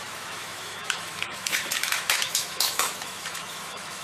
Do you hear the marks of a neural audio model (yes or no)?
yes